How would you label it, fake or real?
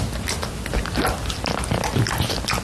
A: real